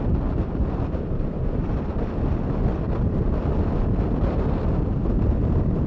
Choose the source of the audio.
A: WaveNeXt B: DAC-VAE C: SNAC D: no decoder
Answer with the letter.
D